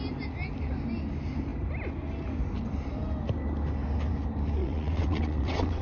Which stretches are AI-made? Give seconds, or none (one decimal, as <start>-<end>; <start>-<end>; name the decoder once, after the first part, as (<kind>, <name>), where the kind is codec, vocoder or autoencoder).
4.6-5.8 (vocoder, WaveNeXt)

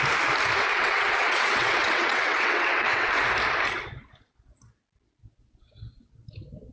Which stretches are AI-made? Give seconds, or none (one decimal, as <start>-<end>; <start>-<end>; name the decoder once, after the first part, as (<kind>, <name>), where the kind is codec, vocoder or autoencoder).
0.7-3.1 (vocoder, WaveNeXt)

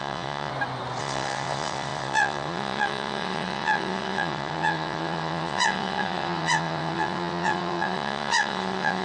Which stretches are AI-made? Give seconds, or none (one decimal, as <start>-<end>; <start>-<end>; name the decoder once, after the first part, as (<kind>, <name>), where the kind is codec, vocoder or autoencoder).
0.0-0.5 (vocoder, WaveNeXt); 1.0-9.0

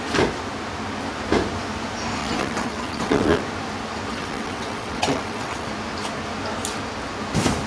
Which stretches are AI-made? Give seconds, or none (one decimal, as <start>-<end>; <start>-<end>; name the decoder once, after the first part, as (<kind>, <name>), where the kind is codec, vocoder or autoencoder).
2.2-3.4 (vocoder, WaveNeXt); 4.1-5.7

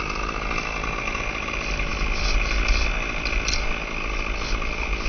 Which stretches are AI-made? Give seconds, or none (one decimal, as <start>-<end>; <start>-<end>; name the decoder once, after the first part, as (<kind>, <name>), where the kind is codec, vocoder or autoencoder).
none

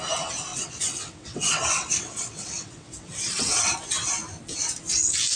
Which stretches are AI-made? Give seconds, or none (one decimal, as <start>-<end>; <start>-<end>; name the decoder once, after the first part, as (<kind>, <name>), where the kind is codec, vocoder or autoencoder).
0.5-3.7 (vocoder, WaveNeXt)

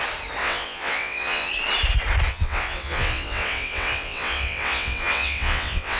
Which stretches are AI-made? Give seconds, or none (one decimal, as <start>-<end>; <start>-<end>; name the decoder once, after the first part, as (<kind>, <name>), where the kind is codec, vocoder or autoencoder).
0.4-1.5 (vocoder, WaveNeXt); 2.3-6.0

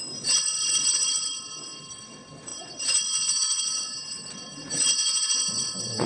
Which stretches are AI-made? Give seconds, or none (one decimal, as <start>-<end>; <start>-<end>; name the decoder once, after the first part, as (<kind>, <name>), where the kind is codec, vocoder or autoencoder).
0.0-6.1 (vocoder, WaveNeXt)